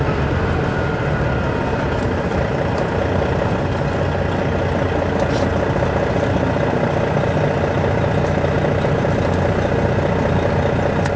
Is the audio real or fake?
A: real